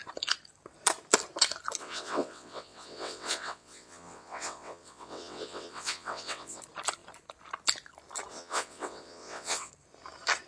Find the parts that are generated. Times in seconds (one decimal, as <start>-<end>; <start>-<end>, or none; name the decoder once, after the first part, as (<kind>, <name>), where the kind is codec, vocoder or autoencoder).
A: 1.8-6.6 (vocoder, WaveNeXt); 8.3-9.7